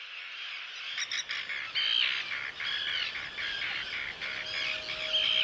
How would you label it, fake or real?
real